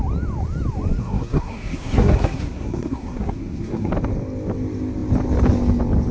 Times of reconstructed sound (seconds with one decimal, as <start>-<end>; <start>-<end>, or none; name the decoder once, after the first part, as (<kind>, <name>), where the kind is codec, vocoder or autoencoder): 1.0-3.9 (codec, SNAC)